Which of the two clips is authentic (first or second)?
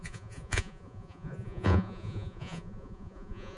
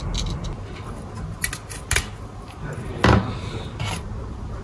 second